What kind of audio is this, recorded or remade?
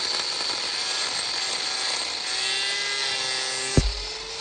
recorded